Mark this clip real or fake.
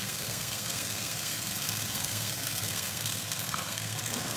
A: fake